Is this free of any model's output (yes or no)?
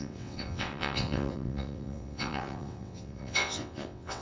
no